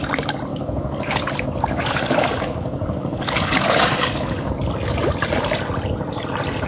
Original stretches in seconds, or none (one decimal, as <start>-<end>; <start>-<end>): 0.0-0.5; 4.5-6.7